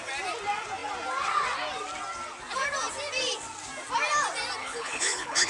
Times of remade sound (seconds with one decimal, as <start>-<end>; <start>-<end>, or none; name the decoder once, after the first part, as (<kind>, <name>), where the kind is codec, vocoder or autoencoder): 4.6-5.5 (codec, HILCodec)